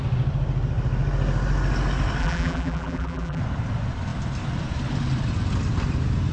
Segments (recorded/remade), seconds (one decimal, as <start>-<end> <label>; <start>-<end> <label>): 0.0-2.2 recorded; 2.2-3.4 remade; 3.4-6.3 recorded